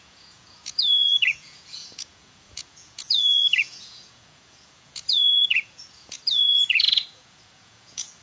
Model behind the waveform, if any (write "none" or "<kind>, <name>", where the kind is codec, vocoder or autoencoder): vocoder, Vocos